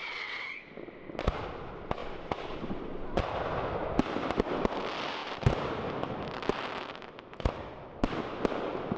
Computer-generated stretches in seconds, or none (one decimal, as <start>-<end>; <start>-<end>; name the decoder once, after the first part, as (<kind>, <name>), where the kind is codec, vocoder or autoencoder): 0.0-0.5 (vocoder, WaveNeXt)

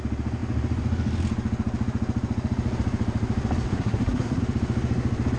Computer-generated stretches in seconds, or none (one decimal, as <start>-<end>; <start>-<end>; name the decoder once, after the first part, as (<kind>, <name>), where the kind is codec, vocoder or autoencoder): 3.7-4.4 (codec, SNAC)

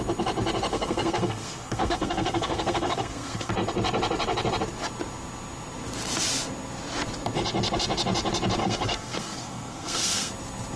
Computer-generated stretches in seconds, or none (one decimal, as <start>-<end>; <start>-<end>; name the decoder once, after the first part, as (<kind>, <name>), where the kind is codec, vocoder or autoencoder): 0.7-3.5 (codec, SNAC); 8.6-10.3

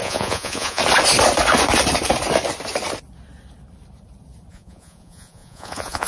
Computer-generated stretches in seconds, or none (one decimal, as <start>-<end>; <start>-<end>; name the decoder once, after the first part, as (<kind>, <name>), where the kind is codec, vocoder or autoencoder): 0.0-0.8 (vocoder, Vocos); 4.5-6.1

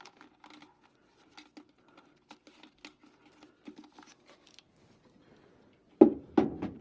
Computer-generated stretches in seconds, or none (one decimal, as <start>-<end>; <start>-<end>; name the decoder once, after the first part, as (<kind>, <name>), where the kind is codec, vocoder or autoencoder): none